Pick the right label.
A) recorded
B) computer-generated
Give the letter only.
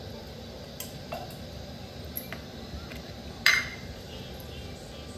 A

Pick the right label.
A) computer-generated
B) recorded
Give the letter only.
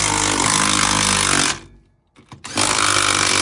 B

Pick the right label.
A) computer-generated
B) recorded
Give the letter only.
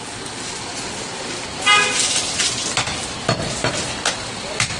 B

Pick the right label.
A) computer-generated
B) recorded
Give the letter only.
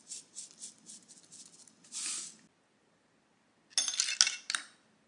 B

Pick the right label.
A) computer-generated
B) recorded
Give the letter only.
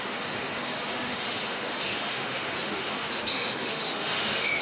A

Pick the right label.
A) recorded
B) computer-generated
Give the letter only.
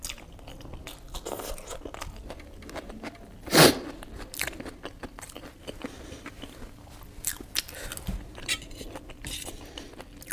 A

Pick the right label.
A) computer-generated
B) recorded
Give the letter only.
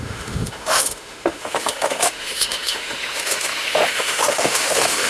A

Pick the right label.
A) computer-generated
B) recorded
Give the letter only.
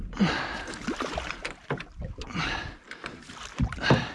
B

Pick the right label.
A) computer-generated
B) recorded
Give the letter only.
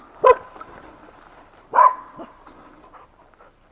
B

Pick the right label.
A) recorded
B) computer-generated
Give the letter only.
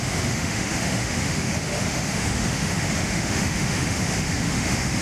B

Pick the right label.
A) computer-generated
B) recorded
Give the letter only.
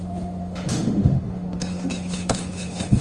A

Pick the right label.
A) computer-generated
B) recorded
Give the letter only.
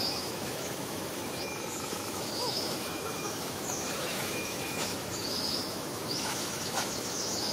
A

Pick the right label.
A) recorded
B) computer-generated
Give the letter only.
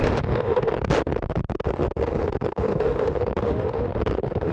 B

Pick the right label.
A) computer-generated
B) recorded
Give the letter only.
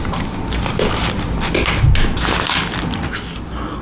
B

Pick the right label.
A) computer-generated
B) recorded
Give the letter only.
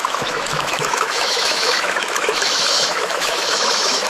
A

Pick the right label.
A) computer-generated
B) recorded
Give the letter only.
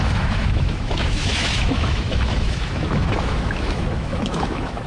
A